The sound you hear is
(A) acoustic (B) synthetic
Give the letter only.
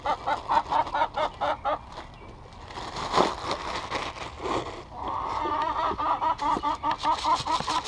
A